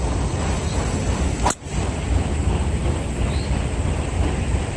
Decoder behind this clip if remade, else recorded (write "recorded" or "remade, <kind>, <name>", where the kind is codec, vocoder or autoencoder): recorded